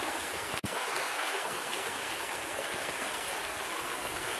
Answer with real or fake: fake